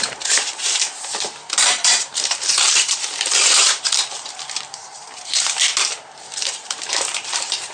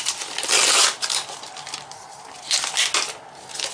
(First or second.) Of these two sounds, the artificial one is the first